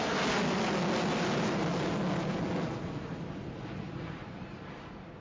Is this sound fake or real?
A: real